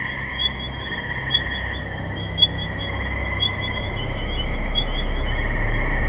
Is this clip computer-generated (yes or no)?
yes